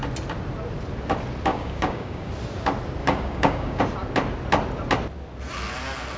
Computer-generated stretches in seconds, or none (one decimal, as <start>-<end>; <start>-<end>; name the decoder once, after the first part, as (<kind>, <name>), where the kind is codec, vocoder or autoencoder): 1.5-2.3 (codec, DAC); 3.0-3.8